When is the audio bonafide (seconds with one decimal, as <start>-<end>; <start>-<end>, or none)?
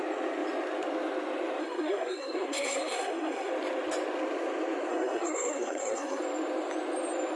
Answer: 0.0-1.6; 3.5-4.9; 6.2-7.4